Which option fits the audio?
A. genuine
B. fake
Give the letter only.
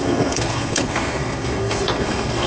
B